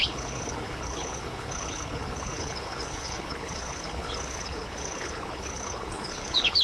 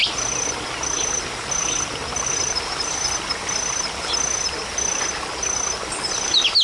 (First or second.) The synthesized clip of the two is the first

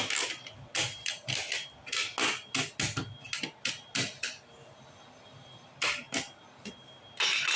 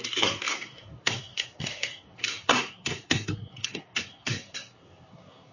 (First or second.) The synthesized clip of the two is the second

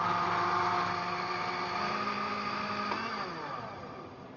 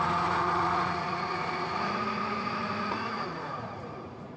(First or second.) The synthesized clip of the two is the second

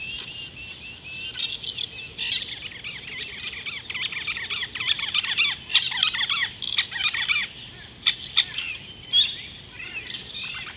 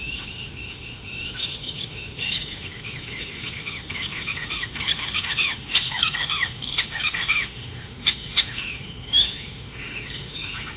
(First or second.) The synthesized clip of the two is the second